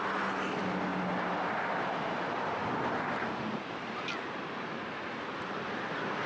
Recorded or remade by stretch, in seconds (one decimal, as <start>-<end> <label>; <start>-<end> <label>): 0.0-6.3 recorded